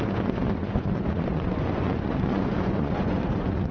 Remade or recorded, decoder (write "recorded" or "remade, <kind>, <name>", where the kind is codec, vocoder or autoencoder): remade, vocoder, Vocos